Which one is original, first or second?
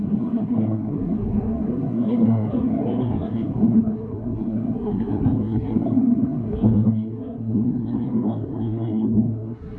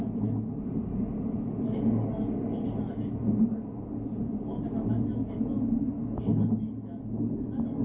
second